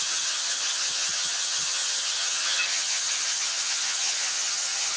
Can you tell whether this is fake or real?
fake